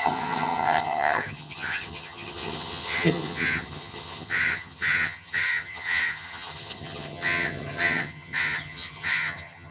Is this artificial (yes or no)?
yes